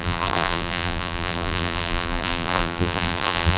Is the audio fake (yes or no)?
yes